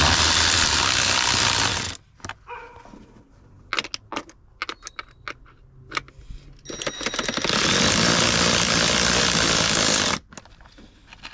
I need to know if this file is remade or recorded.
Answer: recorded